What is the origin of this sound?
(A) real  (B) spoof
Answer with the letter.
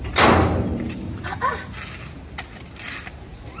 A